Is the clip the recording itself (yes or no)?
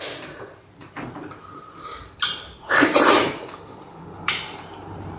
no